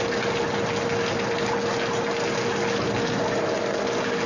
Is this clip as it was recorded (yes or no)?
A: yes